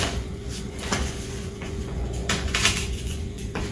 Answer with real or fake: fake